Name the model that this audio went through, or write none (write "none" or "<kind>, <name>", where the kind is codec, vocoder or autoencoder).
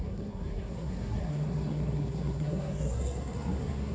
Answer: codec, SNAC